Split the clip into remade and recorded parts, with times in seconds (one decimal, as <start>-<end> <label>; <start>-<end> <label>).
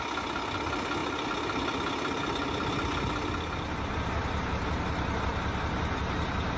0.0-6.6 recorded